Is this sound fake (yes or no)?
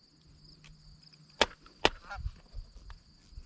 no